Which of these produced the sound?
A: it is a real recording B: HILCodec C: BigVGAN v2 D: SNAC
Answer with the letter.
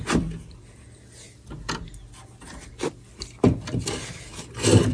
A